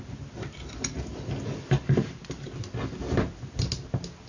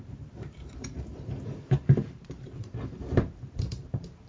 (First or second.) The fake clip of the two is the second